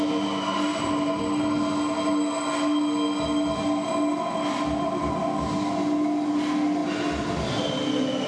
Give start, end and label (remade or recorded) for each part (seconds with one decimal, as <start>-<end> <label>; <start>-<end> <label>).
0.0-0.7 recorded; 0.7-1.2 remade; 1.2-8.3 recorded